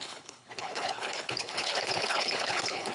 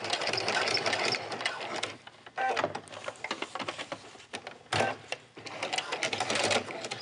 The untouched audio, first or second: second